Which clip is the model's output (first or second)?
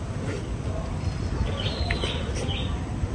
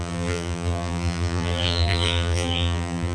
second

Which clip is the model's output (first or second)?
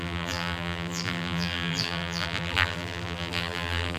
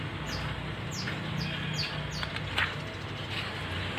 first